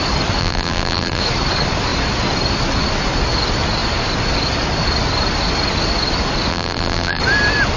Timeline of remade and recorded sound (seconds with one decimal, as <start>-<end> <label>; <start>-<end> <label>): 0.0-0.4 recorded; 0.4-1.2 remade; 1.2-6.5 recorded; 6.5-7.2 remade; 7.2-7.8 recorded